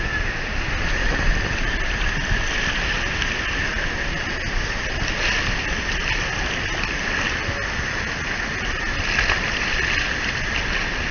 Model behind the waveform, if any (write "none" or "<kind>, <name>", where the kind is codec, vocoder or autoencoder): none